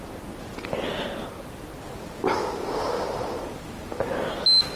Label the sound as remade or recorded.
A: recorded